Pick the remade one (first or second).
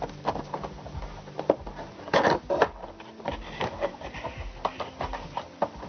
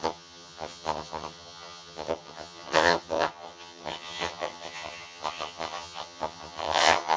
second